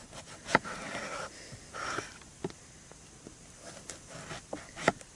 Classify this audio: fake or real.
real